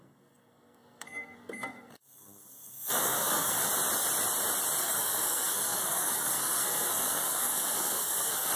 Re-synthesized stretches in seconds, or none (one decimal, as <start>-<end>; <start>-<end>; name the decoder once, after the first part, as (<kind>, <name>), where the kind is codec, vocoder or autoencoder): 0.0-3.7 (codec, SNAC); 4.8-8.6